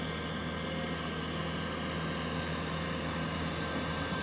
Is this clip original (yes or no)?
yes